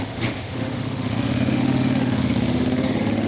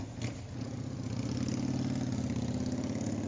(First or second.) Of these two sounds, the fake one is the first